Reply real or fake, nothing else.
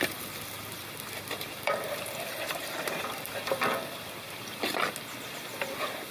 fake